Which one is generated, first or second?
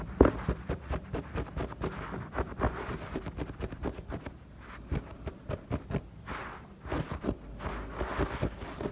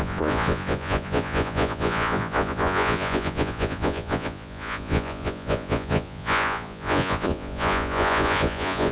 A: second